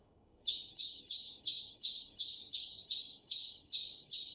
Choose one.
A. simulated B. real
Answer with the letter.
A